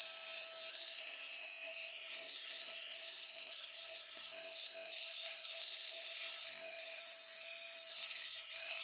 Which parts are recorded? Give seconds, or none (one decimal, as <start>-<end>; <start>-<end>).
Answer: 0.0-0.7; 7.0-7.9